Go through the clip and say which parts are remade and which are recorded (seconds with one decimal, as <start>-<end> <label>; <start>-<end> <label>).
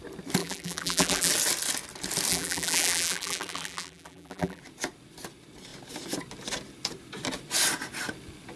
0.0-0.4 recorded; 0.4-1.3 remade; 1.3-2.3 recorded; 2.3-4.6 remade; 4.6-8.6 recorded